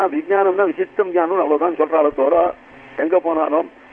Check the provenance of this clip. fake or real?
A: fake